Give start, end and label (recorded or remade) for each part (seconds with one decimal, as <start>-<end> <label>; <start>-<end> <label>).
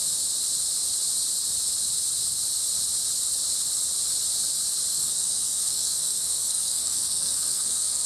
0.0-4.9 recorded; 4.9-8.1 remade